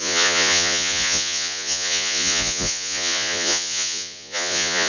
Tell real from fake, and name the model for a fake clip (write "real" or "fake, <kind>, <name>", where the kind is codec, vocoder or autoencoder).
fake, vocoder, Vocos